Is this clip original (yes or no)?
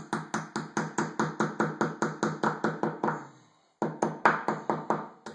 yes